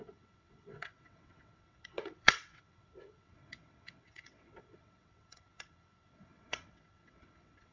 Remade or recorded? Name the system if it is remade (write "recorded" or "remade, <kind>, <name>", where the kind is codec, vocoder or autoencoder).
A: remade, vocoder, WaveNeXt